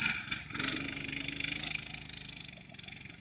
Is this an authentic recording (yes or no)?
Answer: yes